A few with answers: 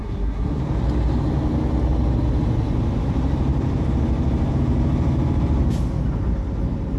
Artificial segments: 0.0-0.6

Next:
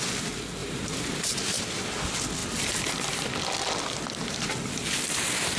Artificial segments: 0.6-1.3

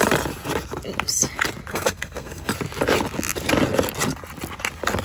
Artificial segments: 1.7-2.5

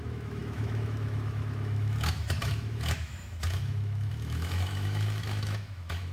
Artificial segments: 0.0-6.1